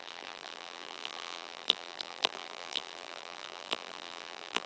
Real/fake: fake